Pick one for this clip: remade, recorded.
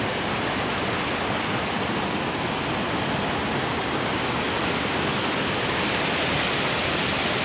recorded